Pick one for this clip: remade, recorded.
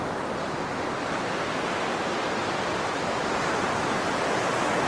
recorded